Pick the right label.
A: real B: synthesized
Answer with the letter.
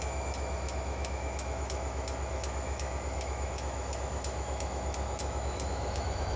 B